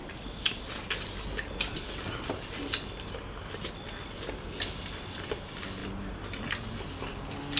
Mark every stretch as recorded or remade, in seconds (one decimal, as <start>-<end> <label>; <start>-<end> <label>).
0.0-7.6 recorded